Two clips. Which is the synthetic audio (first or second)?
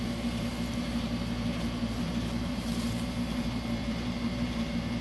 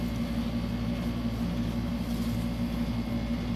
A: first